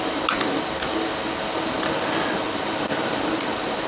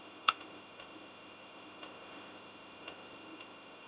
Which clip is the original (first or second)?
first